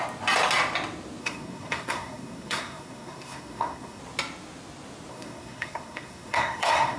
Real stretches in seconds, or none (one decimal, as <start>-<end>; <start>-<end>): 0.0-1.2; 4.0-5.1